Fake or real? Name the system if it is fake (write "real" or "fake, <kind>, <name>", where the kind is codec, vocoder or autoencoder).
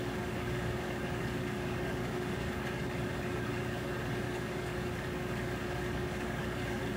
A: fake, codec, DAC